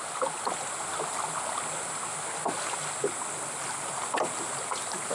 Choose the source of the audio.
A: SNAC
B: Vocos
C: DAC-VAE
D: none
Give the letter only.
D